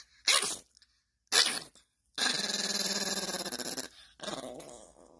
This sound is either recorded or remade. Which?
recorded